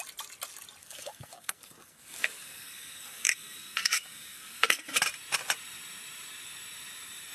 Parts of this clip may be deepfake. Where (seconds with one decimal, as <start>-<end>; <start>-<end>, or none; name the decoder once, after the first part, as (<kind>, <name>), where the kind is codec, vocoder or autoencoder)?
0.8-5.0 (codec, SNAC)